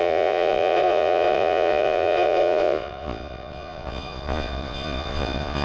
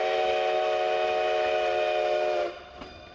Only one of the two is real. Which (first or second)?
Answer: second